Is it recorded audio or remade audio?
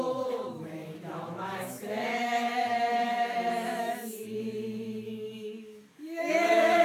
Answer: remade